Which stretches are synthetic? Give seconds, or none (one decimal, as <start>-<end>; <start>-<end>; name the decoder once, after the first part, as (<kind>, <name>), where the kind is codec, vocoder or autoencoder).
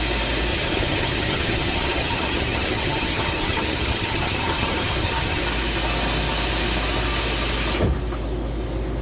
0.5-5.4 (vocoder, HiFi-GAN)